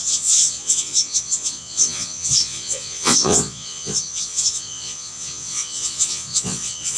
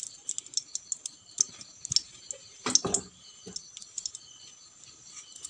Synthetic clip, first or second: first